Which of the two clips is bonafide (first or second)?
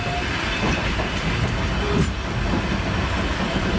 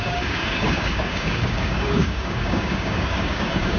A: first